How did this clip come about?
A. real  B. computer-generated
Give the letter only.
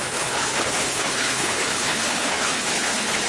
B